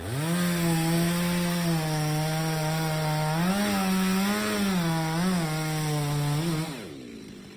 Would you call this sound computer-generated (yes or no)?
no